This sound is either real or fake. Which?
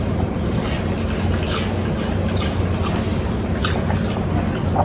real